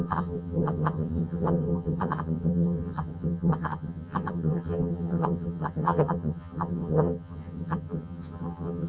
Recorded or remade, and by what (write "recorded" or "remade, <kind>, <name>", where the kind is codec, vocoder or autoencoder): remade, vocoder, HiFi-GAN